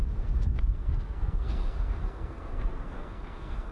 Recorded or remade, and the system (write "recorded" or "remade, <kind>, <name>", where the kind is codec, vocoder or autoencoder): remade, codec, SNAC